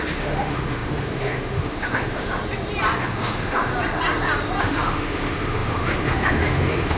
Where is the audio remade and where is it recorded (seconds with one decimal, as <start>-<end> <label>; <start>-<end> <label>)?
0.0-2.4 remade; 2.4-3.0 recorded; 3.0-3.7 remade; 3.7-4.6 recorded; 4.6-7.0 remade